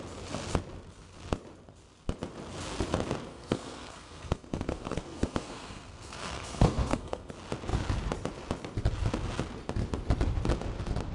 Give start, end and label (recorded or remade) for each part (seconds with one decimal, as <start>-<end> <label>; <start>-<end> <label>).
0.0-3.3 recorded; 3.3-7.3 remade; 7.3-11.1 recorded